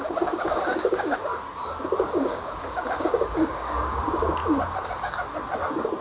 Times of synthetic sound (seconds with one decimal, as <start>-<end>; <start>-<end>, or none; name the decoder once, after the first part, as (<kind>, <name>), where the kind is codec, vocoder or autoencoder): 0.0-1.2 (codec, DAC); 2.2-4.4